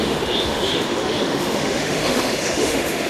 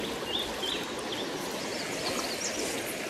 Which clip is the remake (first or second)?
first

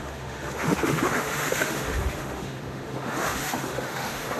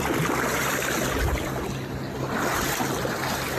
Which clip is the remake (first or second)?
first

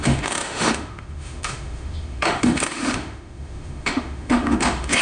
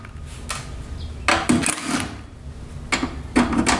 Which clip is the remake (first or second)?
first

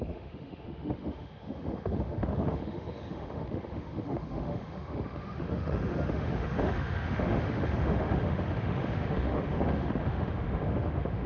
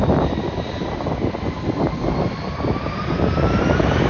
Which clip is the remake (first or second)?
first